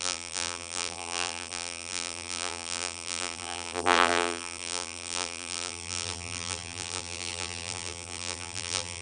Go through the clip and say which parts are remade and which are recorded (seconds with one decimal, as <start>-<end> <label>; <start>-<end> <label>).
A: 0.0-9.0 remade